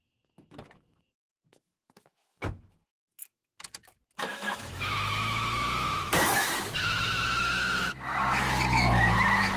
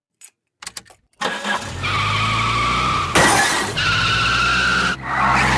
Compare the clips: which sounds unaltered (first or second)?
second